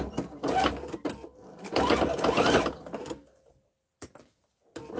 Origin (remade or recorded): recorded